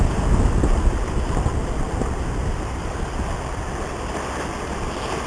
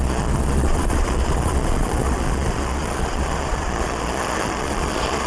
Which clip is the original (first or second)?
first